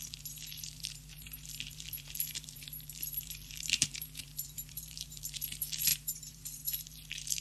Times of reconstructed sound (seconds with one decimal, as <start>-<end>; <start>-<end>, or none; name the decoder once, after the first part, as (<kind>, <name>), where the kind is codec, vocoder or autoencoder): 0.0-7.4 (vocoder, BigVGAN v2)

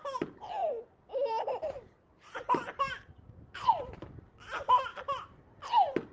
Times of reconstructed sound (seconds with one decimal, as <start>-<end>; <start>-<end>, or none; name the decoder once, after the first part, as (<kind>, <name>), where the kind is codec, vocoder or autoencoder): 0.6-4.3 (vocoder, BigVGAN v2); 4.9-5.4

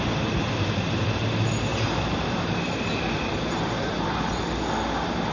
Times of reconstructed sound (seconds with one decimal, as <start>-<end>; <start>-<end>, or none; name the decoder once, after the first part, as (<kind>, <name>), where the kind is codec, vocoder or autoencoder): 1.7-4.6 (vocoder, BigVGAN v2)

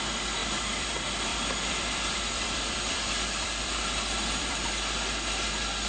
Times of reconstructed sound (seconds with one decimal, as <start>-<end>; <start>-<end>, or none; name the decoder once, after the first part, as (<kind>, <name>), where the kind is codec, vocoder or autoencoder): 0.4-0.9 (vocoder, BigVGAN v2); 1.3-4.7

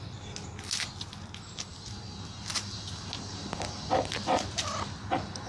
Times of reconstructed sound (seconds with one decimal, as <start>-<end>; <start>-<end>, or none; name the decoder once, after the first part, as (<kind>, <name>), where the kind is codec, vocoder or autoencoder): none

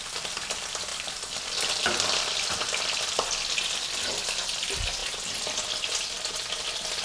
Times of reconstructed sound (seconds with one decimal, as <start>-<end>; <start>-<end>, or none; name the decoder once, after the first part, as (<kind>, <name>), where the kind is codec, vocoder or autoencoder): 0.9-1.4 (vocoder, BigVGAN v2); 5.0-5.8